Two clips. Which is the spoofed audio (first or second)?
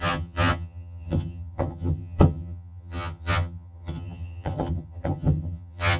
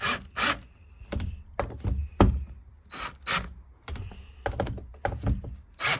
first